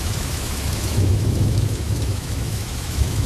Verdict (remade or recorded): remade